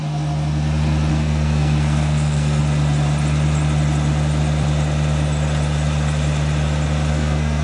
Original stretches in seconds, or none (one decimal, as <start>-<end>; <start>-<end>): 0.0-1.1; 2.6-7.1